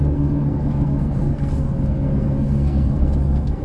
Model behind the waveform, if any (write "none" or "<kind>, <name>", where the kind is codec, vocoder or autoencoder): codec, SNAC